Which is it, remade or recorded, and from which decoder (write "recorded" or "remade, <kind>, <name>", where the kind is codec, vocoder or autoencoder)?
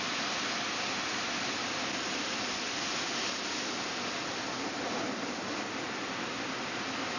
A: recorded